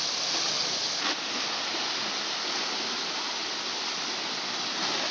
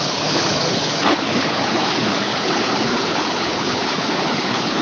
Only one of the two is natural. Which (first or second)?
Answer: first